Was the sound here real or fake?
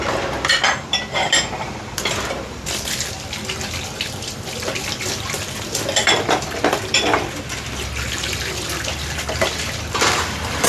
fake